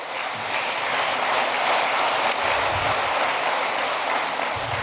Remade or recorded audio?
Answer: recorded